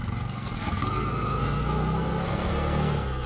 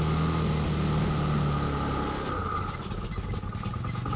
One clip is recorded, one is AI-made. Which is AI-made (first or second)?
first